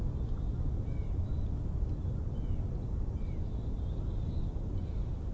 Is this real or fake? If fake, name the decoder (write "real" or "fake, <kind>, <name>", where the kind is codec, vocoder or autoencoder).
real